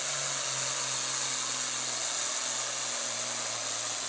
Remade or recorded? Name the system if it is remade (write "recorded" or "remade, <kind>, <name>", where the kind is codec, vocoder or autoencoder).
recorded